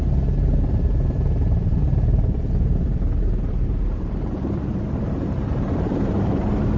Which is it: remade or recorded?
remade